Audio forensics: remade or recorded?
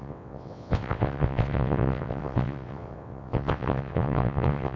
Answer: remade